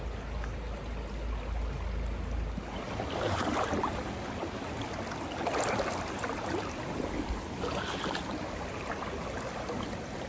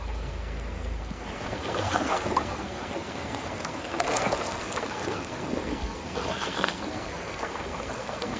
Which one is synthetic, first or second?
second